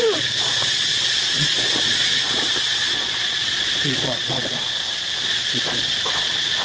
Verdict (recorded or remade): remade